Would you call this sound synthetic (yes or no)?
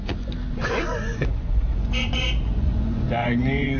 yes